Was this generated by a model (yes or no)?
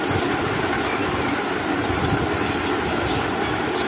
no